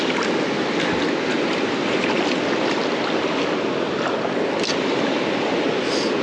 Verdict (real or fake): real